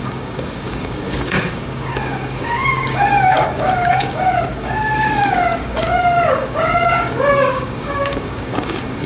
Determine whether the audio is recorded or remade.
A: remade